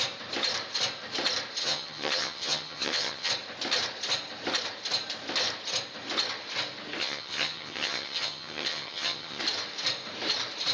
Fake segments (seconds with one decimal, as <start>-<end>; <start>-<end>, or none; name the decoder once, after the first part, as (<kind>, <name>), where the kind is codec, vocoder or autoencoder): 1.6-3.3 (vocoder, HiFi-GAN); 7.0-9.4